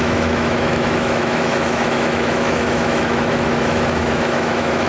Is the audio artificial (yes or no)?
yes